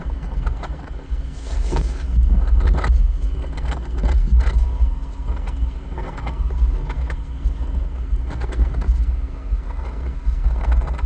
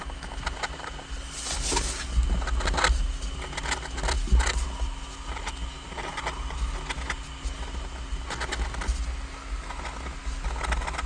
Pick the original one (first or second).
second